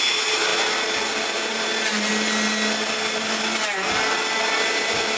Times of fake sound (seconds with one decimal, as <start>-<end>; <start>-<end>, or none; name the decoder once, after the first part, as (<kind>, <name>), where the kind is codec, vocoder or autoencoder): none